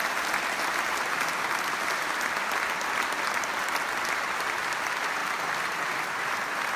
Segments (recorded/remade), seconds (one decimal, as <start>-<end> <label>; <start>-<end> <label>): 0.0-5.2 recorded; 5.2-6.8 remade

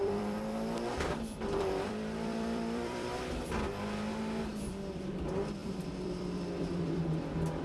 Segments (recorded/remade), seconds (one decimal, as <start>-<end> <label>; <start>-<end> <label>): 0.0-3.2 remade; 3.2-4.5 recorded; 4.5-5.1 remade; 5.1-5.6 recorded; 5.6-7.0 remade; 7.0-7.6 recorded

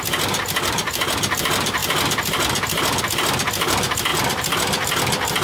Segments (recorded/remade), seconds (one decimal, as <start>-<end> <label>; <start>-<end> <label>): 0.0-4.1 recorded; 4.1-4.9 remade; 4.9-5.4 recorded